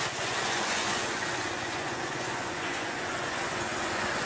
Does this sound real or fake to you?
fake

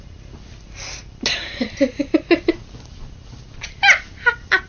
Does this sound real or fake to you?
real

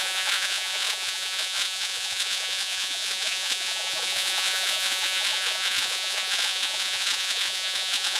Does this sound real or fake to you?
fake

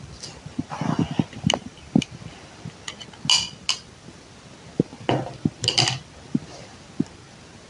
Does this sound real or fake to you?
real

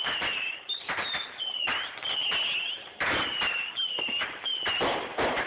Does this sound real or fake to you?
real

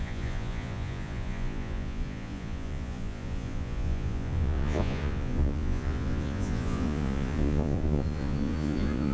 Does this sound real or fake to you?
fake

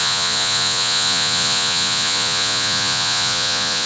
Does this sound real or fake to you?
fake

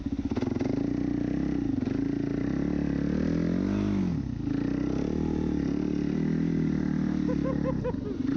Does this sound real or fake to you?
real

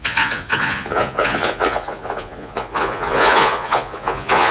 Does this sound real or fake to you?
fake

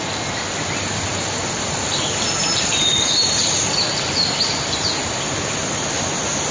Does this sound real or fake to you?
real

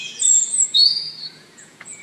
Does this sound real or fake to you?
fake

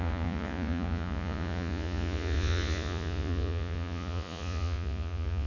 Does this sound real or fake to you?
fake